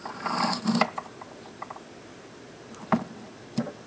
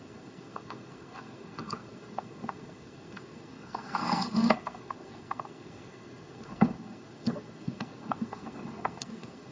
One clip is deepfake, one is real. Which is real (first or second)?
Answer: first